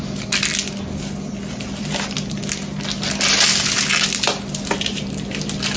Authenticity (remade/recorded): recorded